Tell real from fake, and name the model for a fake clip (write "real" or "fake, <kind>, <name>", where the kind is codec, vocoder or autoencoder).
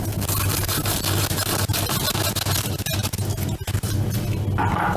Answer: real